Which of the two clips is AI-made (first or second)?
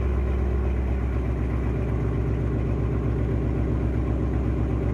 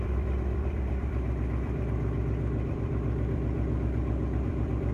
second